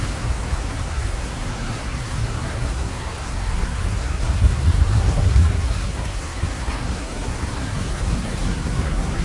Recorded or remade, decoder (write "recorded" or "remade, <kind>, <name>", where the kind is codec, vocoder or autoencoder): remade, codec, SNAC